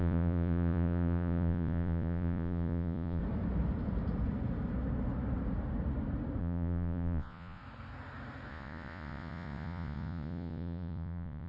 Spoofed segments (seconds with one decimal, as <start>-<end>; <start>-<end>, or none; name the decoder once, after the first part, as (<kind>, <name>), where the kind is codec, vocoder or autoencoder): 0.0-3.2 (vocoder, Vocos); 6.4-7.6; 8.5-11.5